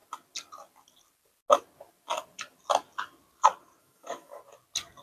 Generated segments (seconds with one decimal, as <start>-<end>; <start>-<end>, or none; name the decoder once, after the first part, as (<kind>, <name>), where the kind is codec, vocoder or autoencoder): 3.8-4.4 (autoencoder, DAC-VAE)